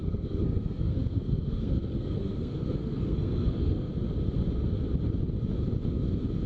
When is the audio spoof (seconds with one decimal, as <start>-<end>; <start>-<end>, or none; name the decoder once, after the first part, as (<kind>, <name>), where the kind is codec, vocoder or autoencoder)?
0.0-3.9 (codec, SNAC)